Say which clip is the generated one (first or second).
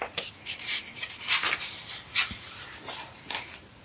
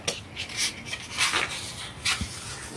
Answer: first